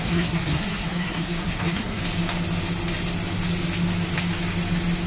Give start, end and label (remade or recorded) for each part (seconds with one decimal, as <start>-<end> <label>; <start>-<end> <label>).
0.0-2.0 remade; 2.0-5.1 recorded